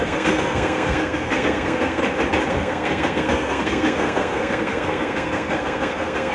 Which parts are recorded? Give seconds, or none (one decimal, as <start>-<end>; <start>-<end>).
2.0-2.5